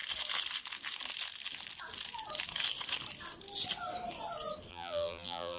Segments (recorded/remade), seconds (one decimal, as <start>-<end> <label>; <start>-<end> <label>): 0.0-4.7 recorded; 4.7-5.6 remade